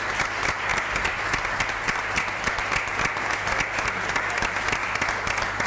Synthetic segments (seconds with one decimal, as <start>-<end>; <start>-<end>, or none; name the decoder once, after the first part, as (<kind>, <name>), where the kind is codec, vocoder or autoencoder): none